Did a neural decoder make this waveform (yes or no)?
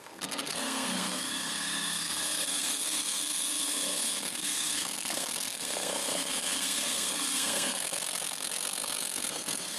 yes